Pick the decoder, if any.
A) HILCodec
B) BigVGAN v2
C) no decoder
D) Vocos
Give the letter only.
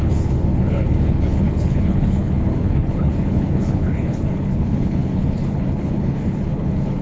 A